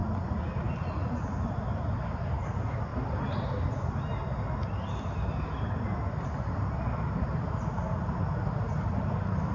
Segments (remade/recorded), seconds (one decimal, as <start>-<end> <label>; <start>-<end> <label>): 0.0-9.5 recorded